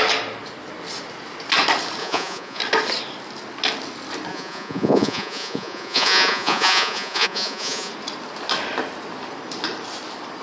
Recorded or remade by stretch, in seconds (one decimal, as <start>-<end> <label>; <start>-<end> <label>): 0.0-2.0 recorded; 2.0-2.6 remade; 2.6-4.3 recorded; 4.3-7.9 remade; 7.9-10.4 recorded

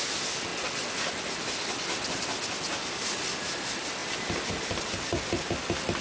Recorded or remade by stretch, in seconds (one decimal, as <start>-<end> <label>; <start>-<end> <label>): 0.0-6.0 recorded

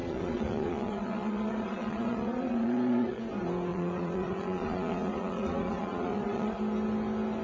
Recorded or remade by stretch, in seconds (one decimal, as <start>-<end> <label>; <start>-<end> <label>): 0.0-3.2 remade; 3.2-3.7 recorded; 3.7-6.6 remade; 6.6-7.4 recorded

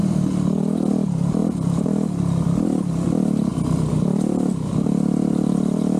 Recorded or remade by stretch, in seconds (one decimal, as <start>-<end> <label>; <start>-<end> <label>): 0.0-0.9 remade; 0.9-6.0 recorded